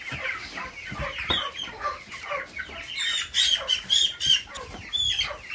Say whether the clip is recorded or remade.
recorded